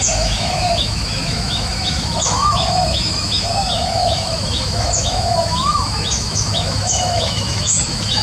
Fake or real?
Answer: fake